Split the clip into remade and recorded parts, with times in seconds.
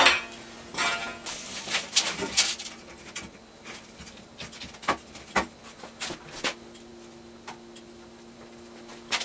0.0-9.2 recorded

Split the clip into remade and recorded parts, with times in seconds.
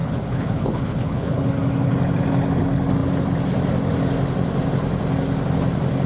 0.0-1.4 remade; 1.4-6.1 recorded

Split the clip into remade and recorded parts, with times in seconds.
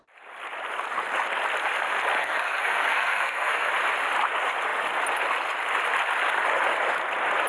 0.0-2.2 recorded; 2.2-3.7 remade; 3.7-7.5 recorded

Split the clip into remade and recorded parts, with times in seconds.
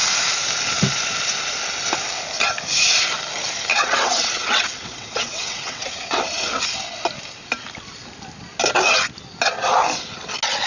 0.0-3.7 recorded; 3.7-6.6 remade; 6.6-10.7 recorded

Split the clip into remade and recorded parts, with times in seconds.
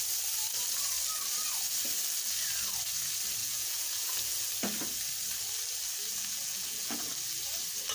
0.0-3.4 recorded; 3.4-4.5 remade; 4.5-6.1 recorded; 6.1-7.1 remade; 7.1-7.9 recorded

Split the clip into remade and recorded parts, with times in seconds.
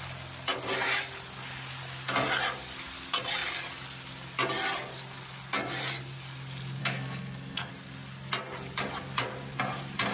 0.0-6.8 recorded; 6.8-7.7 remade; 7.7-10.1 recorded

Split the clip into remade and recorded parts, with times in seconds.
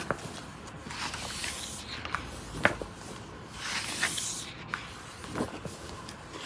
0.0-5.5 recorded; 5.5-6.1 remade; 6.1-6.5 recorded